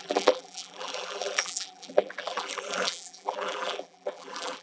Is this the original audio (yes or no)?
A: no